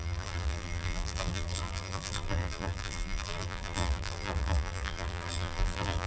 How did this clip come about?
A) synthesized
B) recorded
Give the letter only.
A